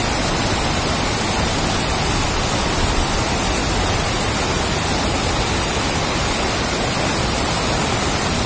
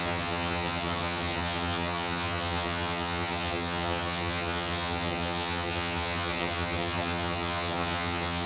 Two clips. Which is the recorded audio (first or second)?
first